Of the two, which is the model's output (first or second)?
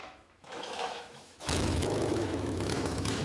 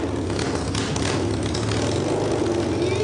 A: first